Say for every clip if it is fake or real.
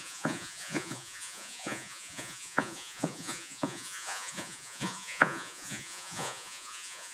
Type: fake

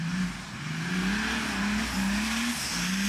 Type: real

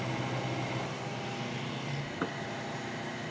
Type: real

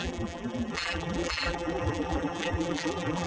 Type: fake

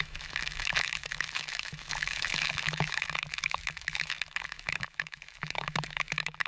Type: fake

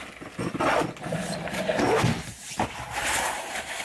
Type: real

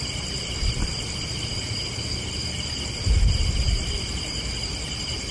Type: real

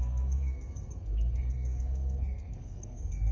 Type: fake